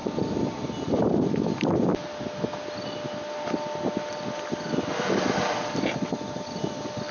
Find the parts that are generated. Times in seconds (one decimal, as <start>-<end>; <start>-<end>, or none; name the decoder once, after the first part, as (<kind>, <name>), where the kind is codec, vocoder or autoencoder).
none